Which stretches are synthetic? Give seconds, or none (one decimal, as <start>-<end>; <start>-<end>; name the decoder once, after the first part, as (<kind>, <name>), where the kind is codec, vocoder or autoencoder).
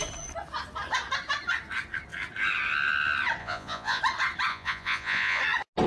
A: 3.4-4.0 (vocoder, Vocos); 4.5-5.4